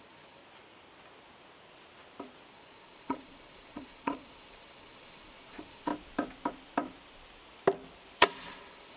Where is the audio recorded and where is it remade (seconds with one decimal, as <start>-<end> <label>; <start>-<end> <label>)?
0.0-0.4 remade; 0.4-2.5 recorded; 2.5-5.9 remade; 5.9-8.2 recorded; 8.2-9.0 remade